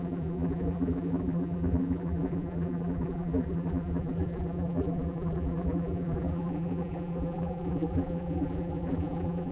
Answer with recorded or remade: remade